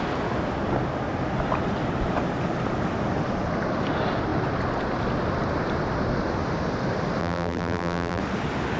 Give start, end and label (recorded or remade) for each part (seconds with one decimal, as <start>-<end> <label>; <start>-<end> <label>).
0.0-7.2 recorded; 7.2-8.2 remade; 8.2-8.8 recorded